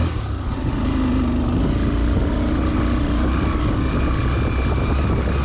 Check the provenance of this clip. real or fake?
real